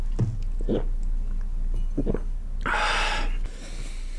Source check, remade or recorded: recorded